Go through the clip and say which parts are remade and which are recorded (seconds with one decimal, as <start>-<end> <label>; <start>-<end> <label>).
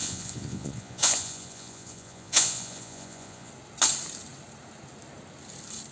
0.0-3.5 remade; 3.5-5.9 recorded